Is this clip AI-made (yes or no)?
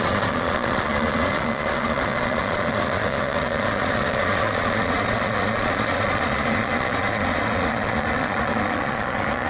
yes